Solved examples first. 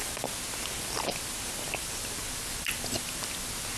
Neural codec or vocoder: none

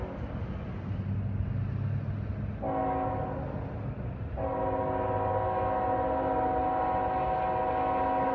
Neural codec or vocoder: none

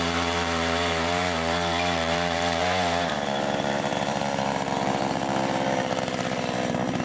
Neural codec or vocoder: vocoder, BigVGAN v2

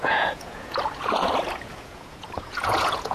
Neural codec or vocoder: vocoder, Vocos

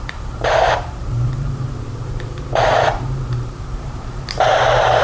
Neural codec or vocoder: vocoder, BigVGAN v2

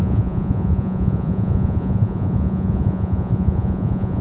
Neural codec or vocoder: vocoder, Vocos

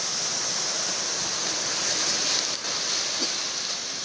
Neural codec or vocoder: none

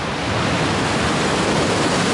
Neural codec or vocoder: none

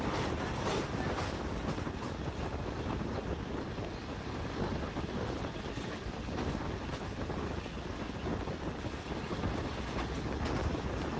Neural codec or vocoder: none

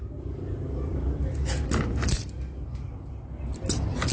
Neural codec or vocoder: none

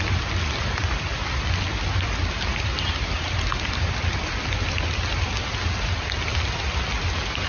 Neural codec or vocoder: none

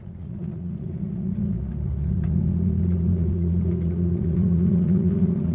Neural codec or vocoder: vocoder, Vocos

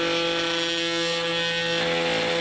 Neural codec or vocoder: none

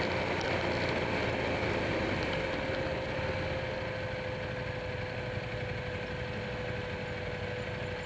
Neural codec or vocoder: none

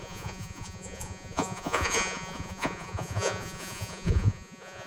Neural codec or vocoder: vocoder, Vocos